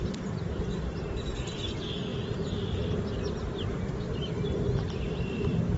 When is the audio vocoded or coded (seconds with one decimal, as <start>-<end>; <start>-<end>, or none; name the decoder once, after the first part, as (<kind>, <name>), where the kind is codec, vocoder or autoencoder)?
0.0-2.1 (vocoder, BigVGAN v2); 3.1-5.8